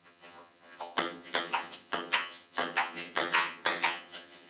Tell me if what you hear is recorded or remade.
remade